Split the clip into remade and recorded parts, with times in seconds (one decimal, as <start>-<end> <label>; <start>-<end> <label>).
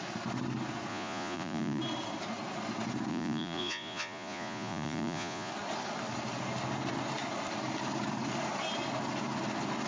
0.0-0.9 recorded; 0.9-1.8 remade; 1.8-3.1 recorded; 3.1-5.5 remade; 5.5-9.9 recorded